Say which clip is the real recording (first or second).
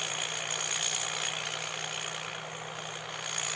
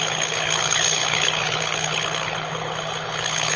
first